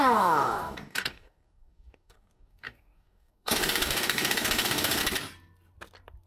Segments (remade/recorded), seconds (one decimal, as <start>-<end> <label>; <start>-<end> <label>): 0.0-5.0 remade; 5.0-6.3 recorded